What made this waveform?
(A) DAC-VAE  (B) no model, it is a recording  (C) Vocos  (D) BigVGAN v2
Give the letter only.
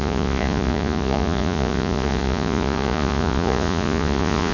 C